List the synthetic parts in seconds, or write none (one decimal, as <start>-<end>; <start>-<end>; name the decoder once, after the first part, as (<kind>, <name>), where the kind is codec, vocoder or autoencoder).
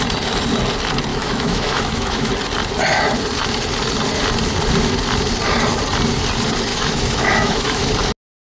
1.1-2.3 (autoencoder, DAC-VAE); 6.7-7.9